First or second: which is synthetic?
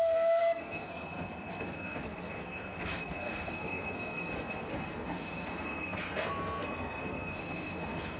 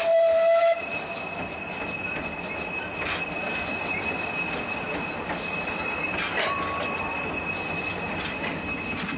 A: first